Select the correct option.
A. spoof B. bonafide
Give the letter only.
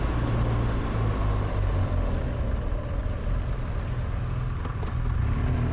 B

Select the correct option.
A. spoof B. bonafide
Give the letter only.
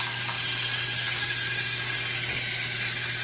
B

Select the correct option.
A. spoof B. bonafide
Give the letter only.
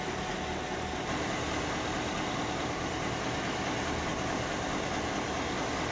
B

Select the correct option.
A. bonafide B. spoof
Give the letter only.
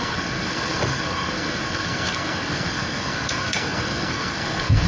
B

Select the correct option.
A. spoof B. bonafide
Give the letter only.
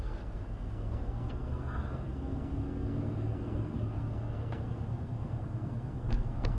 A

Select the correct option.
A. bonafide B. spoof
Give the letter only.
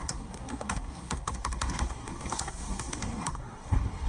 B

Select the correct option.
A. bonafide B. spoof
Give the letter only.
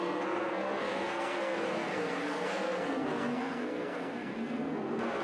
B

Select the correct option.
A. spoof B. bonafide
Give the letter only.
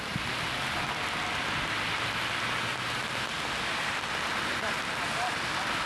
B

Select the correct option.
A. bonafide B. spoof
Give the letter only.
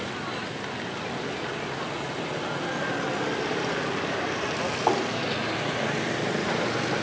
A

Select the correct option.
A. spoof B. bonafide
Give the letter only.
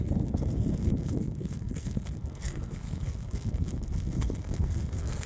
A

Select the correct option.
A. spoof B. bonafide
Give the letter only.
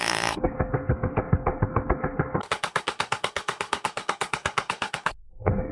A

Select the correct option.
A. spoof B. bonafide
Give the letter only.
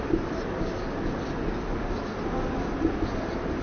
B